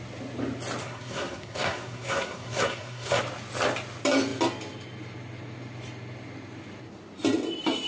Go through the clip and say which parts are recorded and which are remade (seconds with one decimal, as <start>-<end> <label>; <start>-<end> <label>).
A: 0.0-0.8 recorded; 0.8-3.2 remade; 3.2-7.9 recorded